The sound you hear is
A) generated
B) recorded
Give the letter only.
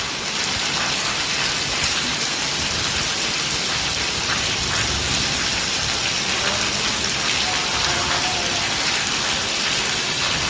B